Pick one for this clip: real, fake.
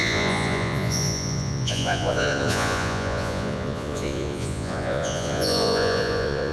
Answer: fake